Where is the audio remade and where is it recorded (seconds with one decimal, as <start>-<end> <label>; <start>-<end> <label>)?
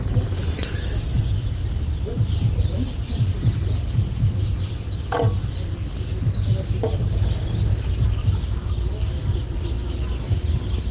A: 0.0-10.9 recorded